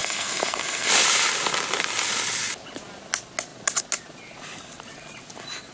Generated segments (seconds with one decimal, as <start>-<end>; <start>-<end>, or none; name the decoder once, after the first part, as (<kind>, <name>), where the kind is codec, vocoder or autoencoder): 0.0-0.9 (codec, SNAC)